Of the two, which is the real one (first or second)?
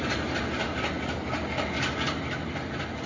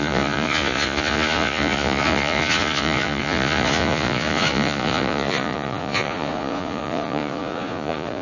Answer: first